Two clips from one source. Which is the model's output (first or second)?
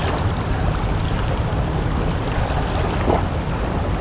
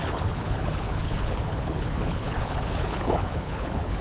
second